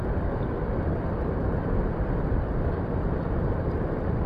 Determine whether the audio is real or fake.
fake